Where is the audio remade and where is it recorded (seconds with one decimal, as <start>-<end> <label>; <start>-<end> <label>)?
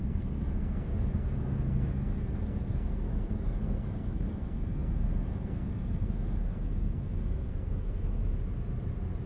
0.0-8.2 remade; 8.2-9.3 recorded